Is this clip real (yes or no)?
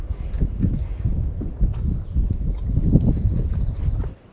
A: yes